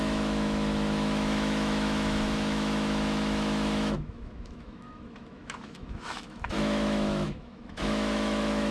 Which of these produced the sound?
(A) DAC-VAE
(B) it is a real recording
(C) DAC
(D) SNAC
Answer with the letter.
A